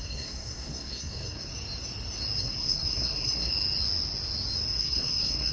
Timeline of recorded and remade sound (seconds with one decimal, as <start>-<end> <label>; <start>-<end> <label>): 0.0-1.5 remade; 1.5-2.4 recorded; 2.4-3.5 remade; 3.5-4.8 recorded; 4.8-5.5 remade